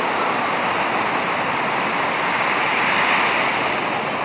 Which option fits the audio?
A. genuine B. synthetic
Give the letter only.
A